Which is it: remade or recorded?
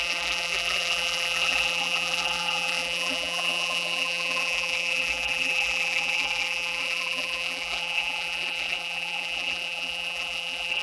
remade